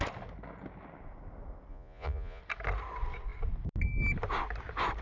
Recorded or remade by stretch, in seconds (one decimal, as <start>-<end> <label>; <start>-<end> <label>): 0.0-1.7 recorded; 1.7-2.4 remade; 2.4-5.0 recorded